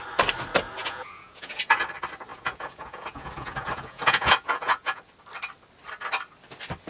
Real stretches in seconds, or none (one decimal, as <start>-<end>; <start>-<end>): 0.0-0.8; 1.7-2.3; 5.0-6.9